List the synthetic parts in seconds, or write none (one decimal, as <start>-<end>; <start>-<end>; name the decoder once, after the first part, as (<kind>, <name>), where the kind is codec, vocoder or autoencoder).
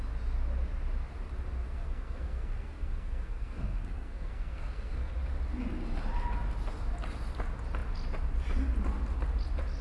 1.6-5.1 (codec, SNAC)